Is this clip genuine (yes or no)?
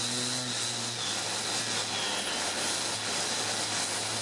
yes